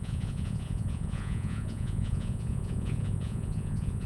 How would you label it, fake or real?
fake